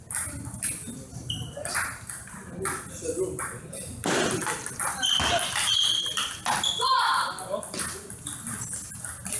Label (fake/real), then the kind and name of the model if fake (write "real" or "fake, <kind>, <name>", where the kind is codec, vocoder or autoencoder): real